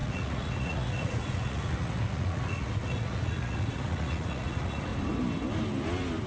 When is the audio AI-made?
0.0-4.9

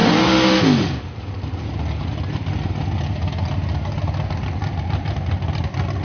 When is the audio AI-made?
none

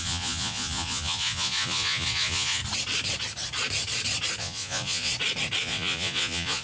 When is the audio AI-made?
0.0-2.6; 4.4-5.1; 5.6-6.6

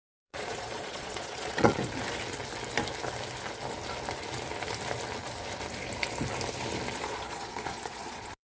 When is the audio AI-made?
0.0-1.8; 6.9-8.6